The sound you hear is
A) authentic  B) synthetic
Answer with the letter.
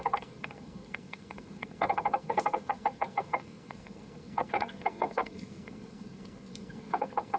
B